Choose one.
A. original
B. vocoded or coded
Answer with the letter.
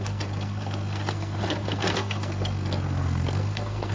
B